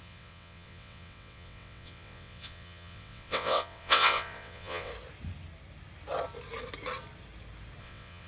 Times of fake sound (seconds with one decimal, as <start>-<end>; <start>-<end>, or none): 0.0-4.9; 7.8-8.3